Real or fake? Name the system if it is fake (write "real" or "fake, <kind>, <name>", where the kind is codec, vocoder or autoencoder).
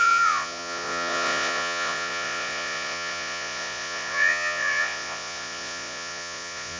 fake, vocoder, Vocos